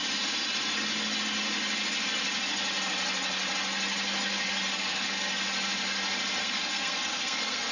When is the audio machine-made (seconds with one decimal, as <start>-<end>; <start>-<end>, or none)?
4.7-5.3; 6.4-7.7